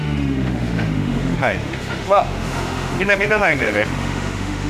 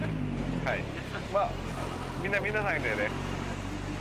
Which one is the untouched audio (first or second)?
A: second